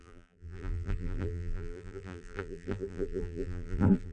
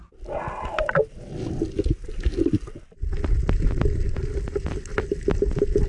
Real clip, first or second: second